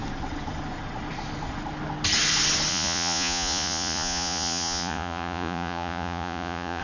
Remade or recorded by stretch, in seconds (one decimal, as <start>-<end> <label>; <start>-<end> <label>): 0.0-2.7 recorded; 2.7-6.8 remade

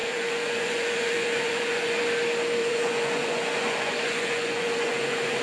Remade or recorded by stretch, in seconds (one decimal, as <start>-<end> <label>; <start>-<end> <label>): 0.0-2.0 remade; 2.0-2.6 recorded; 2.6-5.4 remade

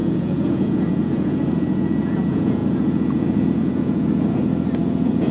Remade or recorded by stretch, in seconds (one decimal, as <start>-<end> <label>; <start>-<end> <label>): 0.0-5.3 remade

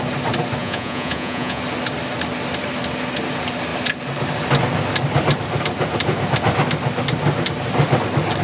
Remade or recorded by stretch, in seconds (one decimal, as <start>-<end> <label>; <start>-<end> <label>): 0.0-0.6 recorded; 0.6-1.6 remade; 1.6-8.4 recorded